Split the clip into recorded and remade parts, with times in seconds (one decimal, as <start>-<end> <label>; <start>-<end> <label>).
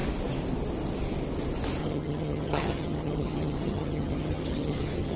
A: 0.0-1.8 recorded; 1.8-5.2 remade